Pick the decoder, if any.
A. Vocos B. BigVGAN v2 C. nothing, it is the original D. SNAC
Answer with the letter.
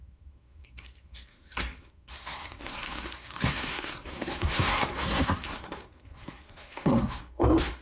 D